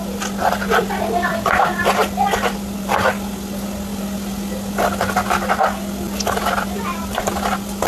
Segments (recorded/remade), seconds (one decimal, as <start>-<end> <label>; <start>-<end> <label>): 0.0-0.8 recorded; 0.8-1.7 remade; 1.7-6.4 recorded; 6.4-7.2 remade; 7.2-7.9 recorded